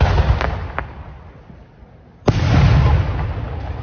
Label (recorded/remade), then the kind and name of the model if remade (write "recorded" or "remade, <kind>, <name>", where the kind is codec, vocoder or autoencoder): recorded